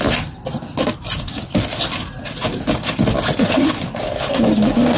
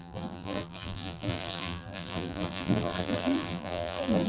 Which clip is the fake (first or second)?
second